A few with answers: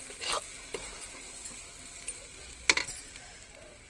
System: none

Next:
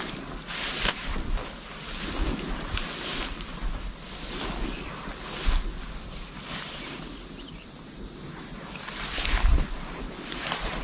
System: vocoder, BigVGAN v2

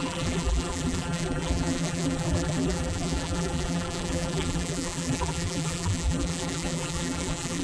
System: vocoder, BigVGAN v2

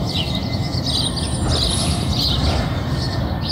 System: none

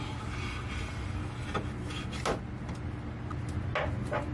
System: none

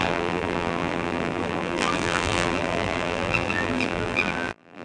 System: vocoder, BigVGAN v2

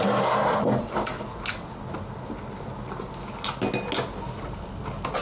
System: none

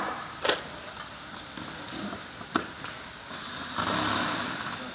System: none